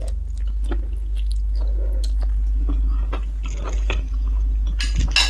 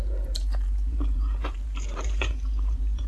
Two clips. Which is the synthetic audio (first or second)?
second